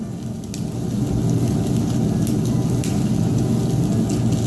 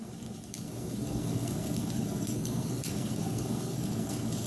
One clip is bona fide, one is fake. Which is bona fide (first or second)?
first